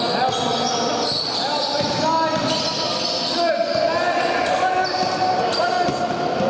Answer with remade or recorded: recorded